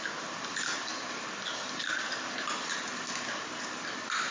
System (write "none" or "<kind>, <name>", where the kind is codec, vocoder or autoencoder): none